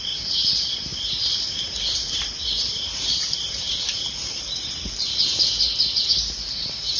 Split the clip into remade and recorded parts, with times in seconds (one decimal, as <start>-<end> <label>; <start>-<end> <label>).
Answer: 0.0-7.0 remade